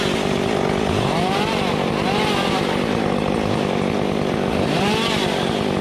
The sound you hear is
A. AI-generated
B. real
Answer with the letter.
B